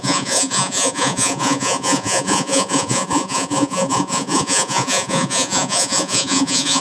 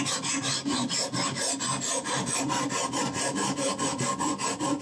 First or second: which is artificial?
first